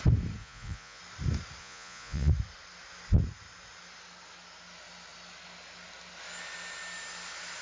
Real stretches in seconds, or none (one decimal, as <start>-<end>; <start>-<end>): 0.0-0.4; 1.0-1.6; 2.3-7.6